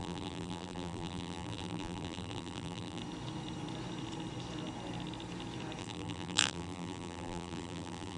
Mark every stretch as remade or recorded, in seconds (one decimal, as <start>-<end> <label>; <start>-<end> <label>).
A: 0.0-3.0 remade; 3.0-5.8 recorded; 5.8-8.2 remade